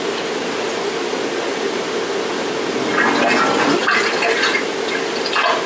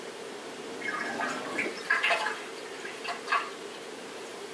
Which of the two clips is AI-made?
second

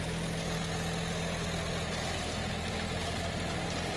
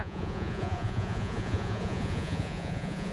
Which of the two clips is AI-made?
second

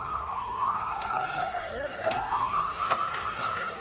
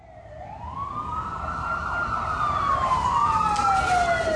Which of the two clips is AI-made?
first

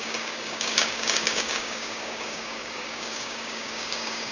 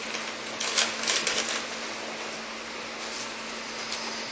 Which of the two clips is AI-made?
first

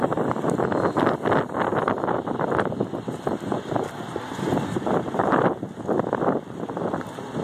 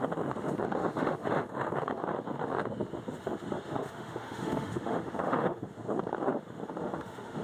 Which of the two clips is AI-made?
second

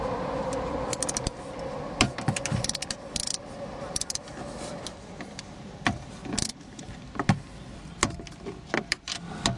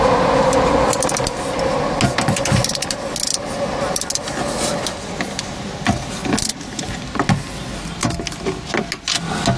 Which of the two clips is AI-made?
first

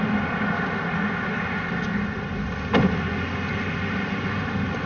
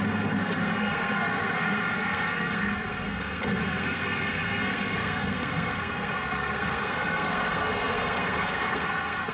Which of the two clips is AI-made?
second